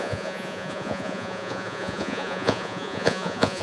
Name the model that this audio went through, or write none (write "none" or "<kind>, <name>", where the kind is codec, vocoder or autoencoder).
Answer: vocoder, Vocos